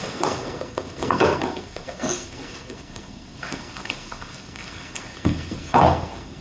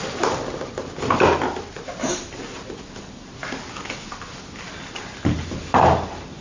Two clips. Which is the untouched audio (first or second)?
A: second